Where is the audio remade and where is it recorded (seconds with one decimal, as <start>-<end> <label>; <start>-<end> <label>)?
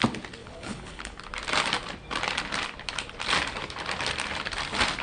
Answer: 0.0-0.4 recorded; 0.4-1.2 remade; 1.2-5.0 recorded